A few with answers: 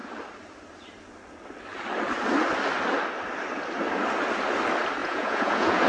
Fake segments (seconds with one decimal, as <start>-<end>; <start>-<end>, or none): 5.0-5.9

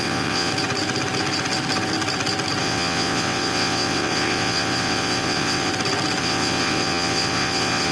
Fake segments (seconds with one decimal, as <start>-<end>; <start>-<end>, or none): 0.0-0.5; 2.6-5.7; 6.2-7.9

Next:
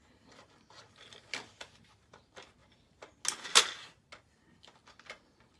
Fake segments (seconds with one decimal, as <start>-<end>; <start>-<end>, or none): none

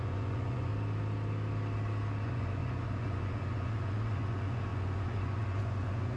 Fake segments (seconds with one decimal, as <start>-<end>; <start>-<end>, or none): 0.0-0.7; 2.2-6.2

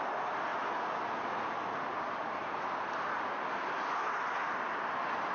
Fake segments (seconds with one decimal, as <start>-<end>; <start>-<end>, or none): none

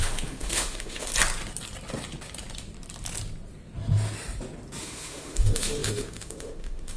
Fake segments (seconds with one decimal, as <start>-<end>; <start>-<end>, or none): 0.0-1.1; 4.8-7.0

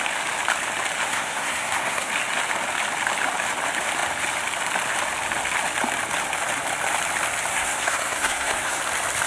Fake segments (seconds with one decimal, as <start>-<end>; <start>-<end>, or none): 1.1-2.1; 7.5-8.8